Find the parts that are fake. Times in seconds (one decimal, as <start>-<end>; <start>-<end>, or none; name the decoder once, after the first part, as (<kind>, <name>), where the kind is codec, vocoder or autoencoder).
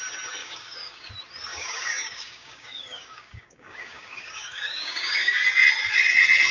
0.4-1.1 (codec, DAC); 1.5-5.4